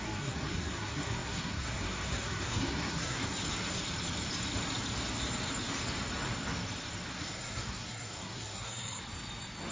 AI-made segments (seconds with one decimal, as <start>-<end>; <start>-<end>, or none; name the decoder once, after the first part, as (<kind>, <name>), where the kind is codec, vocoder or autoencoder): 0.0-3.4 (codec, SNAC); 7.1-9.0